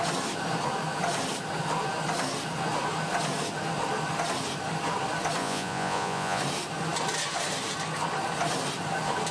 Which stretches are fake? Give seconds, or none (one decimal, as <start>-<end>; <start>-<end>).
5.4-6.4